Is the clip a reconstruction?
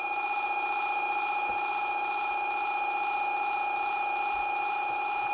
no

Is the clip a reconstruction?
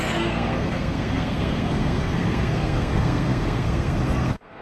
yes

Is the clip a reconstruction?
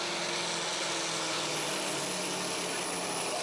no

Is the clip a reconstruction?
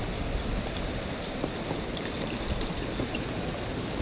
yes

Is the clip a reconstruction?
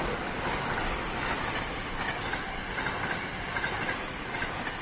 no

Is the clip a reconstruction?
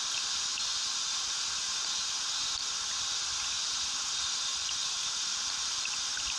no